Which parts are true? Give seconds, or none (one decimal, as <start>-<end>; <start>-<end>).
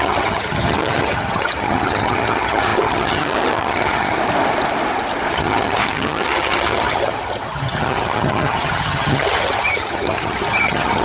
4.2-5.3